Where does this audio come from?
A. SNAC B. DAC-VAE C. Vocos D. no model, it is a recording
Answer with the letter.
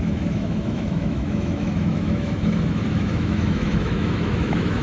B